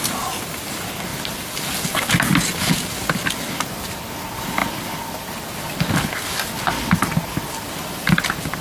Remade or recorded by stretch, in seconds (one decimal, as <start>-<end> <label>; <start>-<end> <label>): 0.0-4.6 recorded; 4.6-5.7 remade; 5.7-8.6 recorded